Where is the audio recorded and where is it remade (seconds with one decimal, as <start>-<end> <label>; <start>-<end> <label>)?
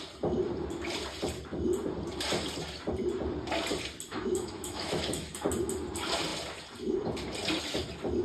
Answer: 0.0-4.1 recorded; 4.1-5.3 remade; 5.3-8.2 recorded